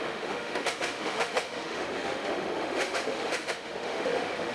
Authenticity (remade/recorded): remade